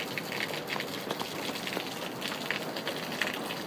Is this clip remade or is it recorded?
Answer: recorded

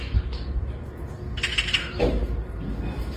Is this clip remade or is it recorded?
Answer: recorded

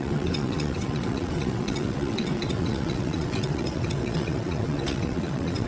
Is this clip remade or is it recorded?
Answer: remade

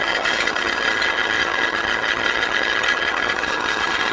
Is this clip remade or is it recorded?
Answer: remade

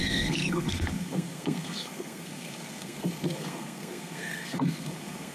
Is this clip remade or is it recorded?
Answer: remade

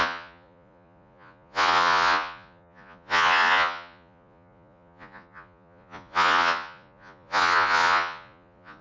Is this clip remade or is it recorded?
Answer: remade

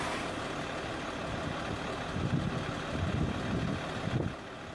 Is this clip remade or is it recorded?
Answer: recorded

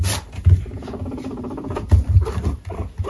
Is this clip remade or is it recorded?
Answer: recorded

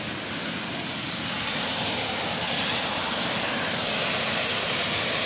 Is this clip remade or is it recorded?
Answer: recorded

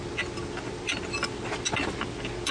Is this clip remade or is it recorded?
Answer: recorded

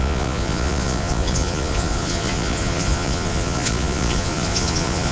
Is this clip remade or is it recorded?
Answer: remade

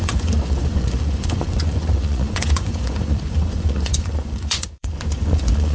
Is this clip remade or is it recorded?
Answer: remade